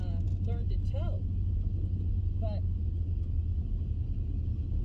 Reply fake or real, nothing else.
real